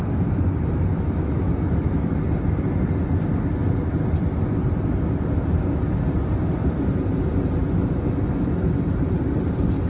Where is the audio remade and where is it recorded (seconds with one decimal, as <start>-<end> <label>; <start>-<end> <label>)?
0.0-0.9 recorded; 0.9-2.1 remade; 2.1-9.9 recorded